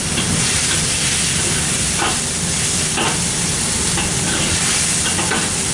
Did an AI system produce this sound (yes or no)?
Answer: no